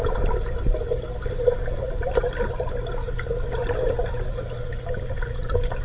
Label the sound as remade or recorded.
recorded